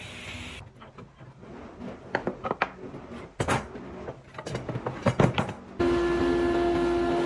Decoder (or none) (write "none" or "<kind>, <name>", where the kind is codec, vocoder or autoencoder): none